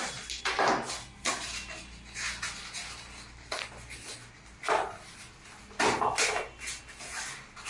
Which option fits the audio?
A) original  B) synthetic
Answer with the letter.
A